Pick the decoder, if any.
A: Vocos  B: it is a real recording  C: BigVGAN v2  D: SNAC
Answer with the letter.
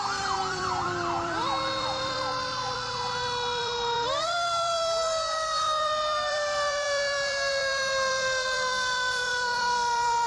C